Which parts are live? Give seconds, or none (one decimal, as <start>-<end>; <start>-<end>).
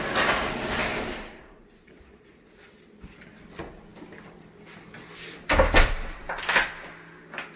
0.0-0.8; 3.2-7.6